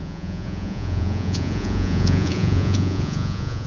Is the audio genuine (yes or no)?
no